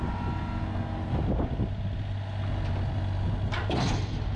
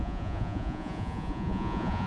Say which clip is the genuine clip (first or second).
first